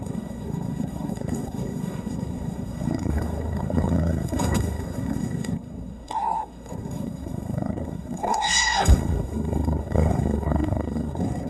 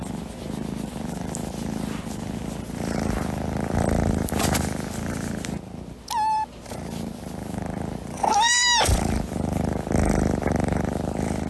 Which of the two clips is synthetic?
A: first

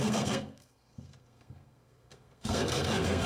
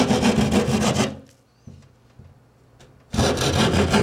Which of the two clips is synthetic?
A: first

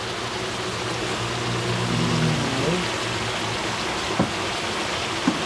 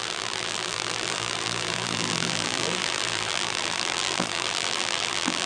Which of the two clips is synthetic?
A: second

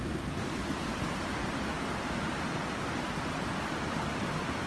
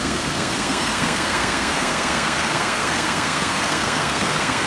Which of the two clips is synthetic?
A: second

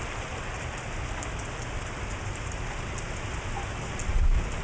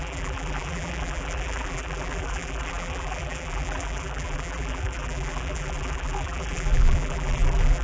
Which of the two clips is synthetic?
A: second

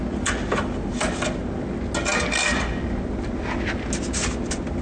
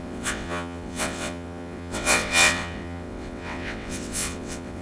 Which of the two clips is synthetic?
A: second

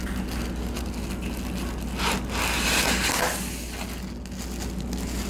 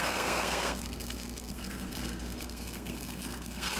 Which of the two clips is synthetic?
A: second